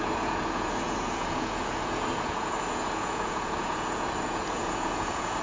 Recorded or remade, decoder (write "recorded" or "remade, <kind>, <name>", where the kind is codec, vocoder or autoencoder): remade, vocoder, Vocos